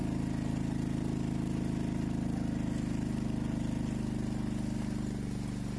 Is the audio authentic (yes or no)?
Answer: yes